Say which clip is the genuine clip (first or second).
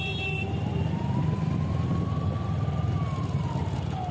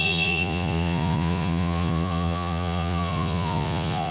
first